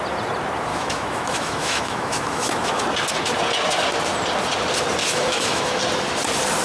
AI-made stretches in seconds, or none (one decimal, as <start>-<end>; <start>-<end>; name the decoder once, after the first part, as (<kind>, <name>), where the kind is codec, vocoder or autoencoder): 0.7-2.8 (autoencoder, DAC-VAE); 5.0-5.8